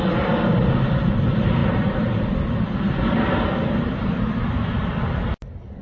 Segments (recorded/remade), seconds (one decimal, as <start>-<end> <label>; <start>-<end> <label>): 0.0-5.8 recorded